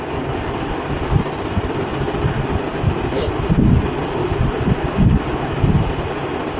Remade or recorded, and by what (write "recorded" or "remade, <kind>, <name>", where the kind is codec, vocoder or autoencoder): recorded